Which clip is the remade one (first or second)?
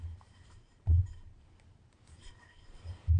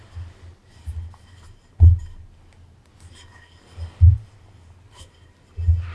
first